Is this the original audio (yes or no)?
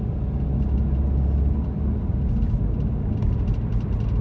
yes